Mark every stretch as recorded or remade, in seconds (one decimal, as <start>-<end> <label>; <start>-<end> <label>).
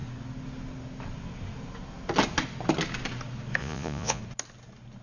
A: 0.0-3.6 recorded; 3.6-4.2 remade; 4.2-5.0 recorded